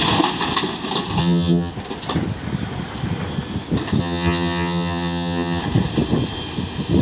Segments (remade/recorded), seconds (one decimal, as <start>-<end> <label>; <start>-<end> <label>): 0.0-1.2 recorded; 1.2-1.7 remade; 1.7-4.0 recorded; 4.0-5.6 remade; 5.6-7.0 recorded